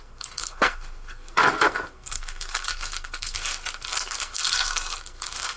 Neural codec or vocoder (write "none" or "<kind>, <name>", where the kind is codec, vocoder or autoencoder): codec, SNAC